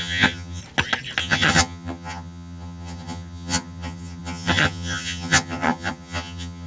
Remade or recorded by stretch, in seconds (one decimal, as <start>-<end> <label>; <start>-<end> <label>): 0.0-0.6 remade; 0.6-1.2 recorded; 1.2-6.7 remade